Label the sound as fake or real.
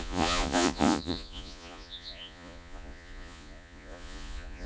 fake